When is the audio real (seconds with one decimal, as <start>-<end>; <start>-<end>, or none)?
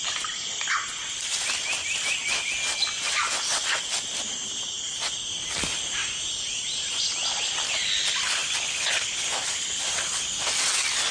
0.0-11.1